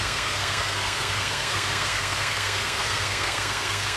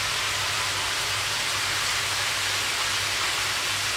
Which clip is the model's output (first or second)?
first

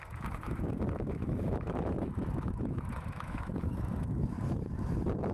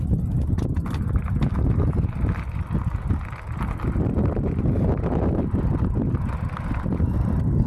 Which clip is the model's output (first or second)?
first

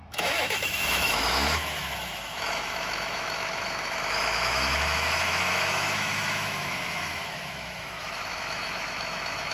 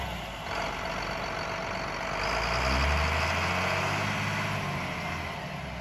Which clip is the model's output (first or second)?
first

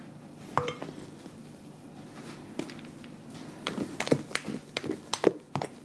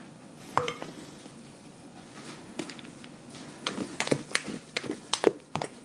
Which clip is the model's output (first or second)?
second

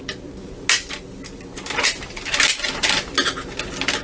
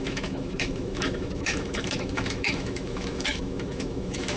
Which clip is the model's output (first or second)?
second